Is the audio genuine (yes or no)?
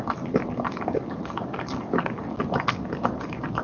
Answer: yes